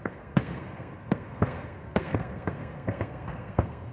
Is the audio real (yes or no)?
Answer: no